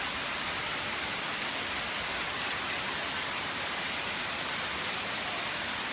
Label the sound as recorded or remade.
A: recorded